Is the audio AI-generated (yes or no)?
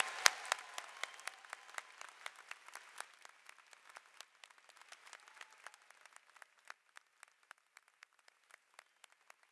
no